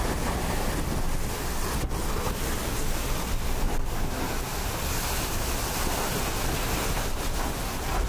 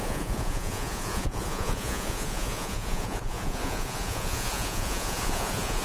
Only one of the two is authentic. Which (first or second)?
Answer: first